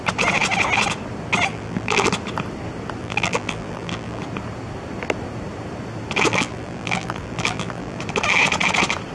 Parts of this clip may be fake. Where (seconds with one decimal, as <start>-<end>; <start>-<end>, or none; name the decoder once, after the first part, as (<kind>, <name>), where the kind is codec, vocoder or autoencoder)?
1.5-2.1 (vocoder, BigVGAN v2); 3.0-4.2; 6.3-8.0